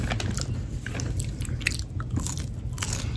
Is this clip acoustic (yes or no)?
yes